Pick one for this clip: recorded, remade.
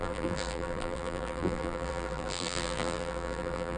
remade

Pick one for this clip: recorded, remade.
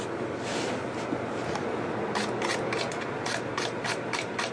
recorded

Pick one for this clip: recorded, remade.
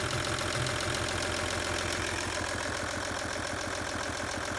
recorded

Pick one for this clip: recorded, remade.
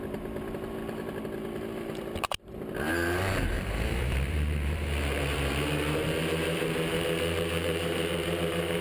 remade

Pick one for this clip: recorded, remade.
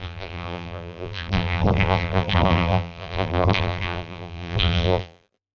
remade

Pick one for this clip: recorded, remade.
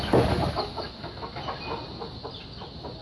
recorded